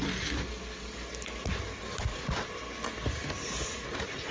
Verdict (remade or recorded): recorded